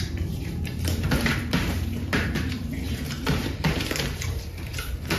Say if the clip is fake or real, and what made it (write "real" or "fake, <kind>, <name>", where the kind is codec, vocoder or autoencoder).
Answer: fake, vocoder, BigVGAN v2